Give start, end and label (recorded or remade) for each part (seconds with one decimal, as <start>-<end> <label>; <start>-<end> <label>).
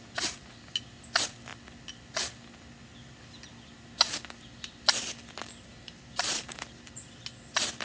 0.0-5.7 recorded; 5.7-7.0 remade; 7.0-7.8 recorded